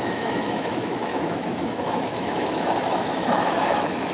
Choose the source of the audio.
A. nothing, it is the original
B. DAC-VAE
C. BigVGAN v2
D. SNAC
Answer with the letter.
B